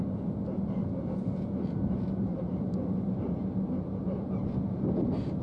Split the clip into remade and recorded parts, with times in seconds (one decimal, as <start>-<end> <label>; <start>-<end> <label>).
0.0-2.3 recorded; 2.3-2.9 remade; 2.9-5.4 recorded